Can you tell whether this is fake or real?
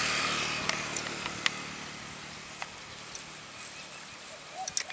real